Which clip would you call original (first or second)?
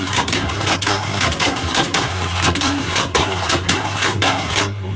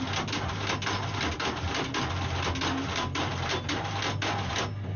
second